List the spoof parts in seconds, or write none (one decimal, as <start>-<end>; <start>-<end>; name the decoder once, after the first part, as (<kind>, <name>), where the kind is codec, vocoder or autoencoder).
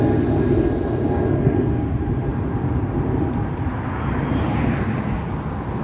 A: 2.3-4.7 (vocoder, BigVGAN v2)